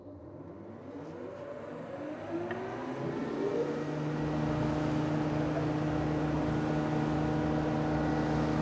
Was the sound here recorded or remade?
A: recorded